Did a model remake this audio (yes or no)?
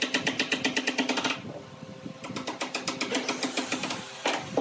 no